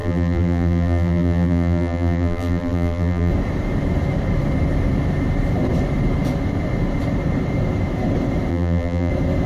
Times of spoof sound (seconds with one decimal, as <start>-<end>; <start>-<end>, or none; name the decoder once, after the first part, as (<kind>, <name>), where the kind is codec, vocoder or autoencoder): 0.0-3.3 (vocoder, BigVGAN v2); 8.5-9.1